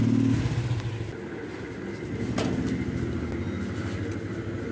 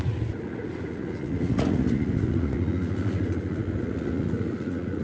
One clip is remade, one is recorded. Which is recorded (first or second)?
first